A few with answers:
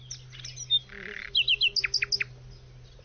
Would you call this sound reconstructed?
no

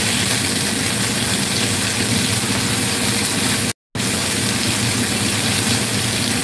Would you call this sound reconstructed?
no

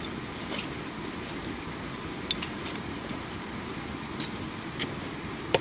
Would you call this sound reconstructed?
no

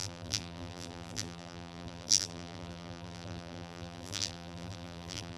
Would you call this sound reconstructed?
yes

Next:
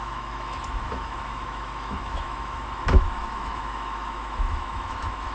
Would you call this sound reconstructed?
yes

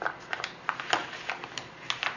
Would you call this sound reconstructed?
no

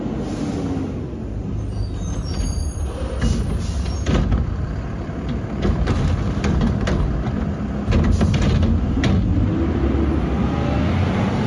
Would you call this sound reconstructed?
no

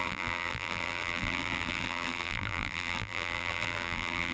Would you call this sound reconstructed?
yes